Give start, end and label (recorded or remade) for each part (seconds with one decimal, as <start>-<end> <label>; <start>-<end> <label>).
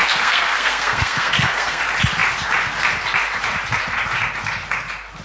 0.0-1.8 remade; 1.8-5.2 recorded